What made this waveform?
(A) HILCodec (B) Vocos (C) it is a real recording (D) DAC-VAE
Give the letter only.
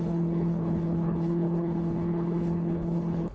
A